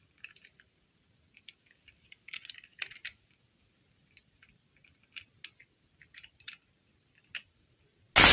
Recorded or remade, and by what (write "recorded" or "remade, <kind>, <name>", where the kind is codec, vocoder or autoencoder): recorded